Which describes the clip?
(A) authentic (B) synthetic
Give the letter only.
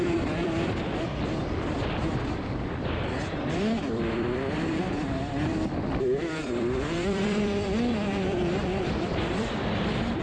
B